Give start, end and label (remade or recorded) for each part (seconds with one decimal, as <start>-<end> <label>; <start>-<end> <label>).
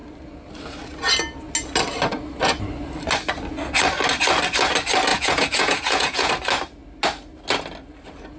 0.0-5.1 recorded; 5.1-6.3 remade; 6.3-8.4 recorded